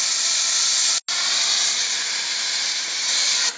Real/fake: real